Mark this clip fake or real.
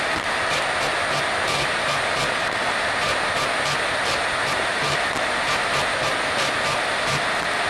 real